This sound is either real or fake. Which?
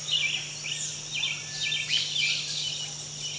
real